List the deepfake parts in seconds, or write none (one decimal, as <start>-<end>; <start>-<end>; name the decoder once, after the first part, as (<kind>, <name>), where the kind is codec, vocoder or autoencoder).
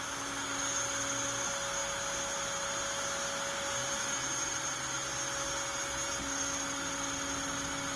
none